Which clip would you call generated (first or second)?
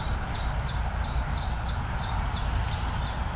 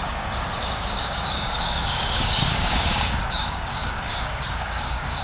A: second